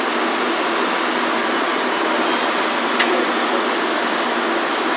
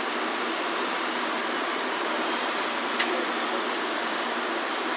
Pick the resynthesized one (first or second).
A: second